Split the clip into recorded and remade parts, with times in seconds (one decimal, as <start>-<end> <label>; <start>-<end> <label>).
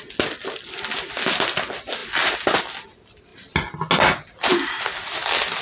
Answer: 0.0-5.6 recorded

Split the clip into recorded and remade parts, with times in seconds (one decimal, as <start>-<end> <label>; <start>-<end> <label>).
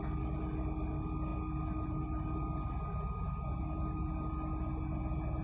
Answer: 0.0-5.4 recorded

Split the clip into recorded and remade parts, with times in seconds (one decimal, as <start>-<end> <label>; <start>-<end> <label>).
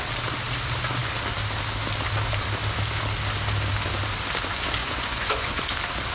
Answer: 0.0-4.8 recorded; 4.8-5.6 remade; 5.6-6.1 recorded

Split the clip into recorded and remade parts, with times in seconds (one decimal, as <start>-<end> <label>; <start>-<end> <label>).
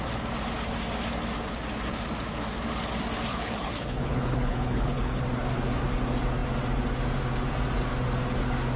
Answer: 0.0-3.3 recorded; 3.3-5.2 remade; 5.2-8.8 recorded